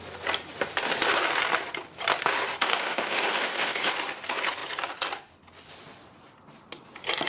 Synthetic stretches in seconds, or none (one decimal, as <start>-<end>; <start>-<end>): 2.6-3.9